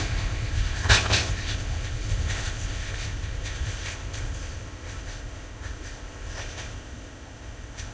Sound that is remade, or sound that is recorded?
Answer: remade